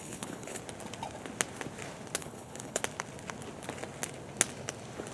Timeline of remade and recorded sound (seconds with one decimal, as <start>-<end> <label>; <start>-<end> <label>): 0.0-0.6 remade; 0.6-2.2 recorded; 2.2-2.8 remade; 2.8-5.1 recorded